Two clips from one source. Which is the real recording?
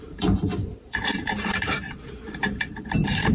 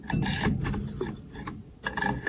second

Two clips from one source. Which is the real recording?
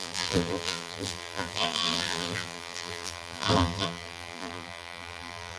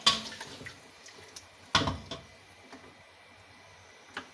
second